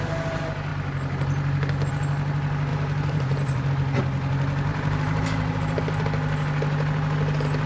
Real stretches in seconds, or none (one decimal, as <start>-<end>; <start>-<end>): 0.0-2.7; 3.7-4.7; 5.8-7.7